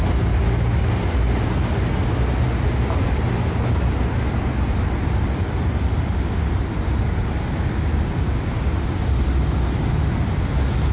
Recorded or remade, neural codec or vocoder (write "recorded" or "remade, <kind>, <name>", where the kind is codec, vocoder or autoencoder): recorded